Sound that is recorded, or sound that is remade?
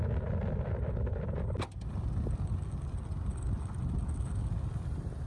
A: recorded